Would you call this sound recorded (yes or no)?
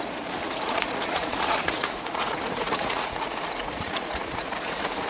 no